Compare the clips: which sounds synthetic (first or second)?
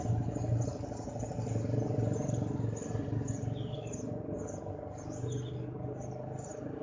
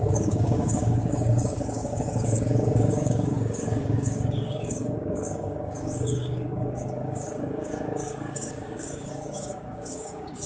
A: second